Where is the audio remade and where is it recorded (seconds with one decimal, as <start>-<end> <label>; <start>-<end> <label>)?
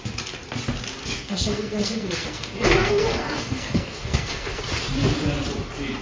0.0-1.0 recorded; 1.0-4.6 remade; 4.6-6.0 recorded